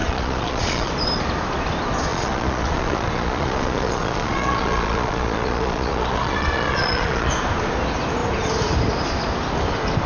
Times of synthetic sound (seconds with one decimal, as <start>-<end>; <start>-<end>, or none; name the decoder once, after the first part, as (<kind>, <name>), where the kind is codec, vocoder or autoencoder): 0.0-0.9 (vocoder, Vocos); 2.1-7.3

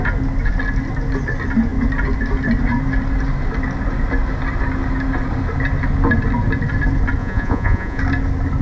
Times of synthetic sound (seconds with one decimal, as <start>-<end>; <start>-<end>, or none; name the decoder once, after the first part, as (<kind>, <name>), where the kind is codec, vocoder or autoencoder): 7.2-8.0 (vocoder, Vocos)

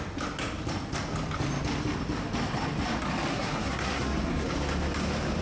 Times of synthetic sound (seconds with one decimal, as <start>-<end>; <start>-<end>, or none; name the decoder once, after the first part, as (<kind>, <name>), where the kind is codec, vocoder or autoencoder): 3.3-4.5 (codec, SNAC)